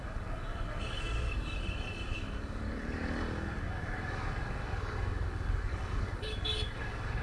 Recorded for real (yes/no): no